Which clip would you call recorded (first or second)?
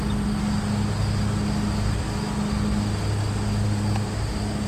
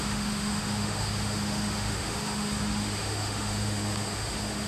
first